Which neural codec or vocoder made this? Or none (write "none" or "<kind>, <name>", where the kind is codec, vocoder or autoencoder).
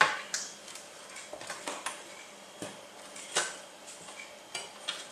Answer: none